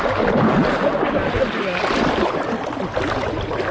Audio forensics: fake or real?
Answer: real